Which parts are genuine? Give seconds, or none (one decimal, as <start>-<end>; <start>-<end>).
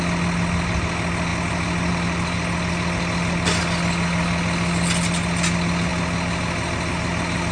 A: 0.0-7.5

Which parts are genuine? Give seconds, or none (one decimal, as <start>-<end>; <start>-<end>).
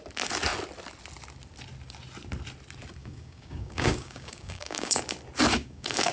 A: 0.0-3.0; 5.0-5.5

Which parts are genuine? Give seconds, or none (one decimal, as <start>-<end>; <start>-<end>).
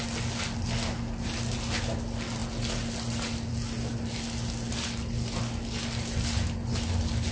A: 0.0-7.3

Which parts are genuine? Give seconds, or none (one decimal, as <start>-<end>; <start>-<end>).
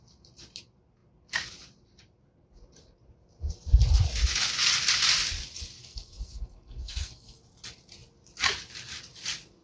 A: 0.0-5.8; 7.4-9.6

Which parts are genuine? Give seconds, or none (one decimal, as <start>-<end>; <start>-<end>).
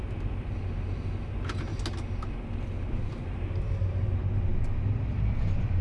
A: 0.0-5.8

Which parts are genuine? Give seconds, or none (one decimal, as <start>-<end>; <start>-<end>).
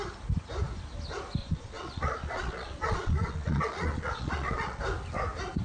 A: 0.0-1.4; 4.8-5.6